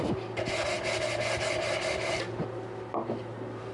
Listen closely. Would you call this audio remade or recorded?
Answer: recorded